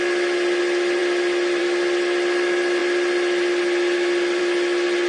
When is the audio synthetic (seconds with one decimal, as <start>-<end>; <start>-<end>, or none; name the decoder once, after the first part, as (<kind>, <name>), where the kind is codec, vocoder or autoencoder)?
none